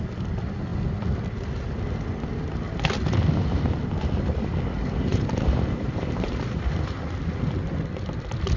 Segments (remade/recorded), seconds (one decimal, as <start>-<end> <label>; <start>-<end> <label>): 0.0-5.1 recorded; 5.1-7.0 remade; 7.0-8.6 recorded